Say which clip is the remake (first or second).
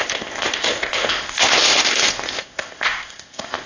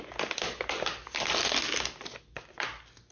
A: first